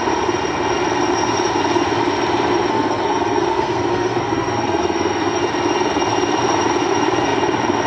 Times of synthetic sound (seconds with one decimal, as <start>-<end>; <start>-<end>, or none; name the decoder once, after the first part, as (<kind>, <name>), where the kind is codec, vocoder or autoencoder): 2.7-5.4 (codec, SNAC)